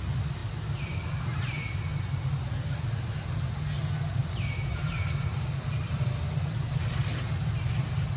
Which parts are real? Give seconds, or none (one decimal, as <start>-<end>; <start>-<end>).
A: 0.0-4.2; 6.8-8.2